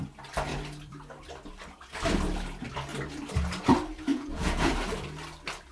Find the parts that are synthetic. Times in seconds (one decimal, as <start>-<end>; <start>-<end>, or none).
4.1-4.7